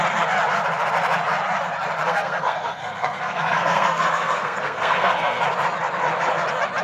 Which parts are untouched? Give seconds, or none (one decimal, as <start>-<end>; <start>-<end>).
0.0-2.0; 5.4-6.8